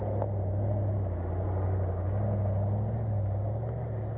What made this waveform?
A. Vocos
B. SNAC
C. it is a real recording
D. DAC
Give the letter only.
C